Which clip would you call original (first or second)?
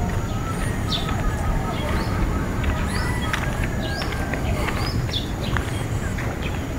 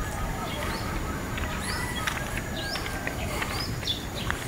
first